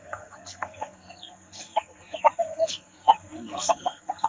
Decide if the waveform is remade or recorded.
remade